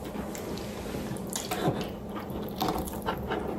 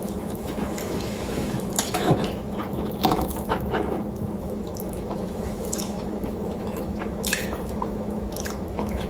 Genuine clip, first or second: first